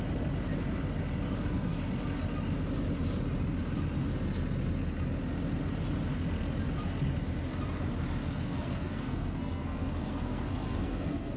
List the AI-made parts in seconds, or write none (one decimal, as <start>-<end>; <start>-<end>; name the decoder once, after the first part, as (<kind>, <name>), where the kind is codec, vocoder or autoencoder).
8.2-11.4 (codec, SNAC)